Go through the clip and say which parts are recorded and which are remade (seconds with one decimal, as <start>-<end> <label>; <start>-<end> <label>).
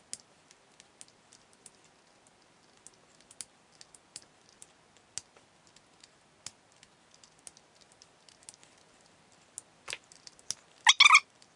0.0-11.6 recorded